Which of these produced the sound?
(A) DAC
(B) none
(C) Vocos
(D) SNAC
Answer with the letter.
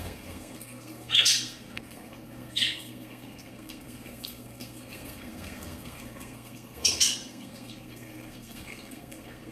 D